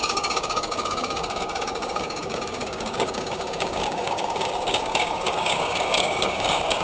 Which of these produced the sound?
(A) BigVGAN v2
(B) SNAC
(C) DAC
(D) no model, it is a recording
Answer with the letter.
C